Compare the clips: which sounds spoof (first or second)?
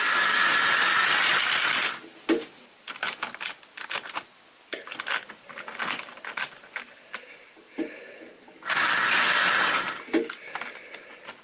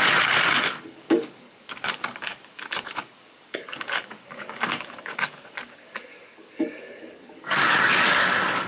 second